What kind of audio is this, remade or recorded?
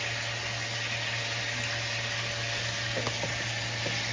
recorded